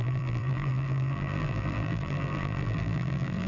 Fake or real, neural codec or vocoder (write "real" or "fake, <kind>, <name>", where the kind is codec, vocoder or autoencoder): fake, vocoder, BigVGAN v2